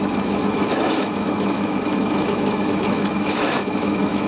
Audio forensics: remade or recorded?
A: remade